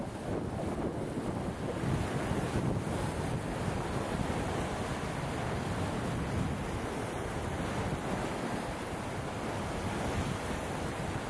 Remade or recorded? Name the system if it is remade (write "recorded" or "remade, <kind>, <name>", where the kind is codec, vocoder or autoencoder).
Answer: recorded